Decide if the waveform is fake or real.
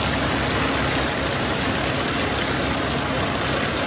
real